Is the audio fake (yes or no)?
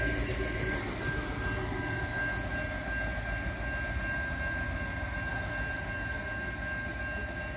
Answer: no